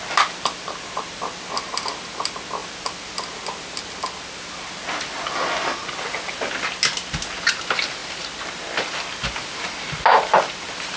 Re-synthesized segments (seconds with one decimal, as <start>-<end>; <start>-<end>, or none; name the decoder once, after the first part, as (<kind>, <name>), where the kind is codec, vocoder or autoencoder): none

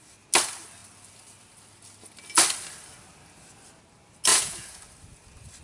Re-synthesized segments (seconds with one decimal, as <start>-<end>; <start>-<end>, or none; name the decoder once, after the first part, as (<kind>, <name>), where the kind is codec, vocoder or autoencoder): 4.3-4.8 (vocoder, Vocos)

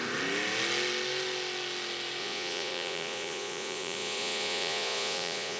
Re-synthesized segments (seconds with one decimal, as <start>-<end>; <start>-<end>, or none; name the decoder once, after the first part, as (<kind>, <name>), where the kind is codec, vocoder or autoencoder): 2.2-5.6 (vocoder, Vocos)

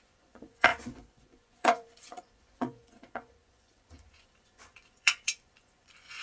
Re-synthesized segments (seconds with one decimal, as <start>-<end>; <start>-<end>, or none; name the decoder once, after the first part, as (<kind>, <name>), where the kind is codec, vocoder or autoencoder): 0.0-6.2 (vocoder, Vocos)